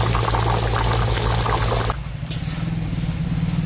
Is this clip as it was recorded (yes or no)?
yes